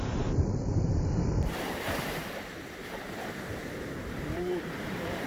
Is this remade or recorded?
remade